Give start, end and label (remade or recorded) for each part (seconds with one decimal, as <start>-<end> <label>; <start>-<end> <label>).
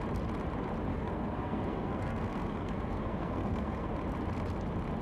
0.0-0.9 recorded; 0.9-3.9 remade; 3.9-5.0 recorded